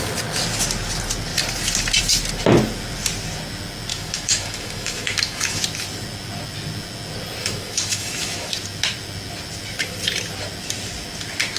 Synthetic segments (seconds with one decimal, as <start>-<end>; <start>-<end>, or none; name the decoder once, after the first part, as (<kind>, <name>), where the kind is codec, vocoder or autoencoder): 3.9-5.6 (autoencoder, DAC-VAE); 7.4-8.5